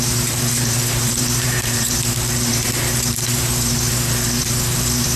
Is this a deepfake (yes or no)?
yes